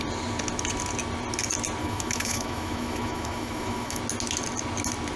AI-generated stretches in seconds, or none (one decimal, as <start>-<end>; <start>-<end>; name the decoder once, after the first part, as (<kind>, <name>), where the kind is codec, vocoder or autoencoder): 1.8-4.0 (autoencoder, DAC-VAE)